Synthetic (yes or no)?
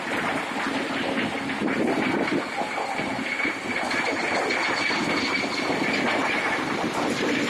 no